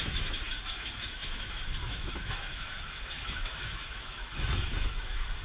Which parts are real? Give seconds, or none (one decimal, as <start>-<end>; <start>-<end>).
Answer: none